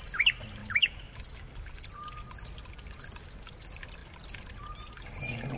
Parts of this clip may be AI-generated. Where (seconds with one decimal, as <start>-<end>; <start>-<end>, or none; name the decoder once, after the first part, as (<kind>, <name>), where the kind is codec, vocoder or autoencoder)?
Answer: 0.6-1.7 (autoencoder, DAC-VAE)